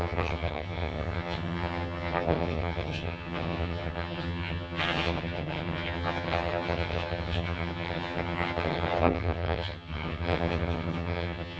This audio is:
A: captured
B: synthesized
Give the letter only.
B